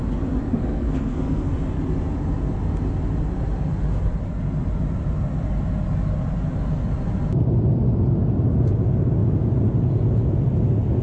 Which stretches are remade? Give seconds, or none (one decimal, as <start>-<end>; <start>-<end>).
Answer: 0.5-1.5